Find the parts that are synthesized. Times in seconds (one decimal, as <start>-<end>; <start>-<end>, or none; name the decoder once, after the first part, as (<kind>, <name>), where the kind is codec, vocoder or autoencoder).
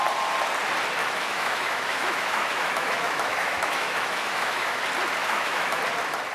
1.0-4.8 (autoencoder, DAC-VAE); 5.2-5.8